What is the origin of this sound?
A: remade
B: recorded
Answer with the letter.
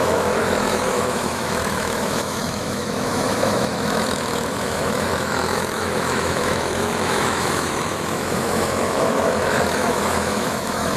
A